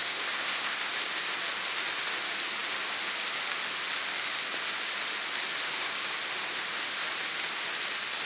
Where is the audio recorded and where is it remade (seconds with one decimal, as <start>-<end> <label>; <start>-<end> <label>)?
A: 0.0-0.9 remade; 0.9-8.3 recorded